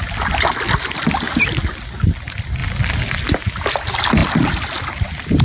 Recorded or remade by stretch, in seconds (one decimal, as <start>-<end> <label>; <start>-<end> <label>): 0.0-5.4 recorded